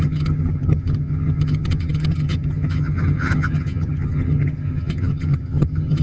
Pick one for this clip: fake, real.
fake